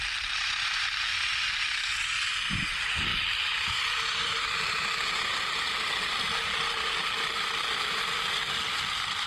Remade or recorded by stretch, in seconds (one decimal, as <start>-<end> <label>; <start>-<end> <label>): 0.0-3.1 recorded; 3.1-5.2 remade; 5.2-9.3 recorded